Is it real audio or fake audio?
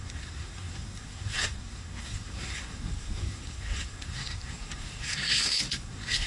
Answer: fake